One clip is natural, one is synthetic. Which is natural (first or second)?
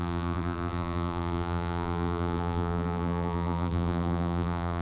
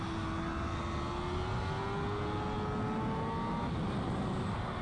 second